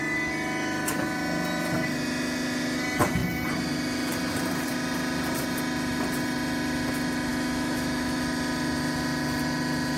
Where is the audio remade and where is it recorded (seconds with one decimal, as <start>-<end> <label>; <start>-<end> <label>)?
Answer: 0.0-7.3 recorded; 7.3-8.2 remade; 8.2-10.0 recorded

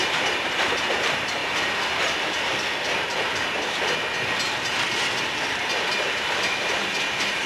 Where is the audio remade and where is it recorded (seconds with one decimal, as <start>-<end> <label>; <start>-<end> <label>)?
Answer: 0.0-1.4 remade; 1.4-5.9 recorded; 5.9-7.5 remade

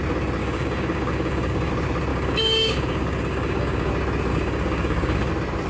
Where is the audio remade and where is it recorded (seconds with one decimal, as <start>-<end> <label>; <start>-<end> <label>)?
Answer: 0.0-0.4 recorded; 0.4-1.7 remade; 1.7-2.1 recorded; 2.1-3.9 remade; 3.9-4.3 recorded; 4.3-5.3 remade; 5.3-5.7 recorded

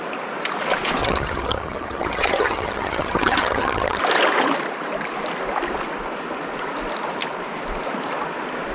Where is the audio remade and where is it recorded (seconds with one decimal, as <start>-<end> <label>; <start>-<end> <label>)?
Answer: 0.0-1.0 recorded; 1.0-4.0 remade; 4.0-8.7 recorded

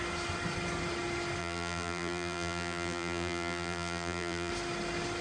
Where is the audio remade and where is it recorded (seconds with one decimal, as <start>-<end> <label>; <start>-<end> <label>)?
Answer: 0.0-1.4 recorded; 1.4-4.5 remade; 4.5-5.2 recorded